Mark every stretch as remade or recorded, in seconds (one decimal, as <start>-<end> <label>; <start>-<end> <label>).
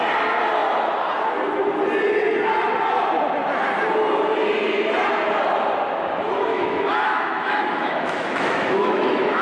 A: 0.0-6.5 recorded; 6.5-9.4 remade